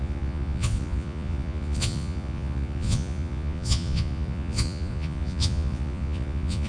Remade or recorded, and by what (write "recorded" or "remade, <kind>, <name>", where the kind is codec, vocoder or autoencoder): remade, vocoder, Vocos